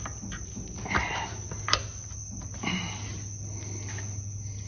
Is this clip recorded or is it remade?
recorded